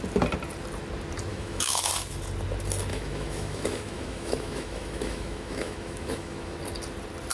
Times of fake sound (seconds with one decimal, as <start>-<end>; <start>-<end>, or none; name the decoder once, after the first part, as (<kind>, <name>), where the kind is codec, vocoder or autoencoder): 1.3-1.9 (autoencoder, DAC-VAE); 2.9-6.6